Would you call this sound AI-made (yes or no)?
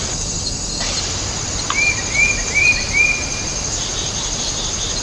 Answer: yes